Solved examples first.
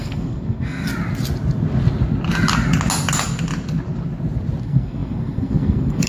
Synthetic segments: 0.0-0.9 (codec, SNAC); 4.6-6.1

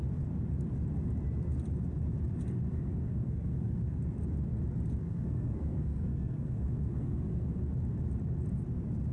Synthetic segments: 2.7-4.0 (codec, SNAC); 5.0-7.6

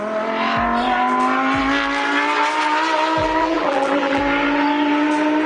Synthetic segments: 3.2-4.2 (vocoder, BigVGAN v2)